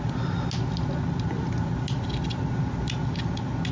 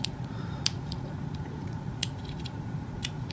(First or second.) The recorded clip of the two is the first